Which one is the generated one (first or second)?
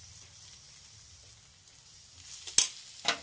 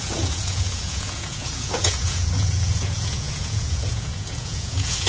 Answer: second